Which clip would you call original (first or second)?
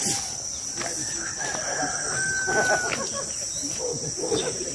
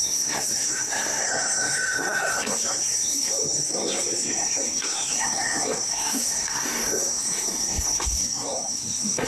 first